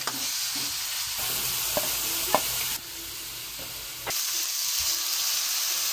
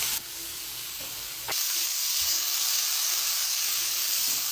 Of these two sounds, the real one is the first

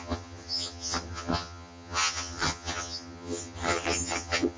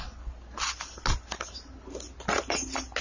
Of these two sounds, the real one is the second